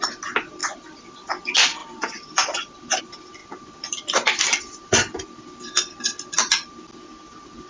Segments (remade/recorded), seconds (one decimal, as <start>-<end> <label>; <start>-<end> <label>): 0.0-0.6 recorded; 0.6-1.1 remade; 1.1-1.8 recorded; 1.8-3.0 remade; 3.0-7.7 recorded